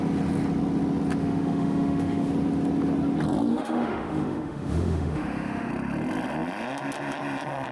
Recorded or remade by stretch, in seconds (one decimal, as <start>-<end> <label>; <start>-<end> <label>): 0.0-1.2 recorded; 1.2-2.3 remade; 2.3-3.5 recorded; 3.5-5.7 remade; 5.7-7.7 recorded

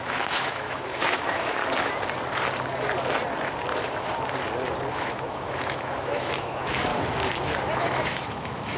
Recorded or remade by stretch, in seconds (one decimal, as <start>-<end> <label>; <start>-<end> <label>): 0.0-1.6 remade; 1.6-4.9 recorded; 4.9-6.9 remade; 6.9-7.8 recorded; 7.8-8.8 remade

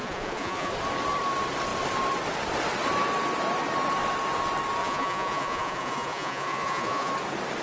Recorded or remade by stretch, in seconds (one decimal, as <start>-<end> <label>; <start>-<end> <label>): 0.0-0.7 remade; 0.7-4.8 recorded; 4.8-7.1 remade; 7.1-7.6 recorded

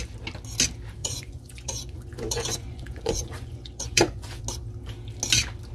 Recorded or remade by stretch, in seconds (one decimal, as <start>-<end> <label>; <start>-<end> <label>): 0.0-1.0 recorded; 1.0-4.4 remade; 4.4-5.7 recorded

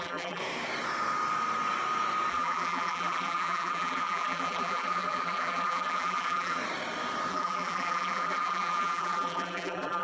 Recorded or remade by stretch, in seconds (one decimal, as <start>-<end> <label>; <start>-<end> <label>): 0.0-0.4 remade; 0.4-2.3 recorded; 2.3-6.6 remade; 6.6-7.3 recorded; 7.3-10.0 remade

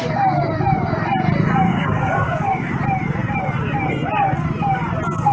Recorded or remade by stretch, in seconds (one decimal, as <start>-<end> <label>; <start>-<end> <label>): 0.0-1.7 recorded; 1.7-2.7 remade; 2.7-5.3 recorded

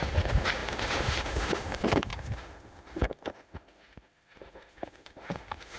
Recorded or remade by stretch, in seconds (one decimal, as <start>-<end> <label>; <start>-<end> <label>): 0.0-5.8 remade